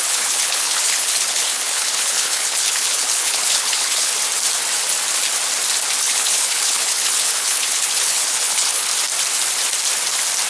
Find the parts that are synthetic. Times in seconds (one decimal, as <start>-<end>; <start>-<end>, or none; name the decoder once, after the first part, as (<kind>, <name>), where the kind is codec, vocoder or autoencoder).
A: 0.0-4.1 (codec, HILCodec); 6.0-8.9